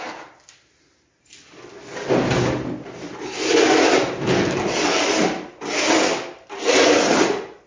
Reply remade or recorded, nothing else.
recorded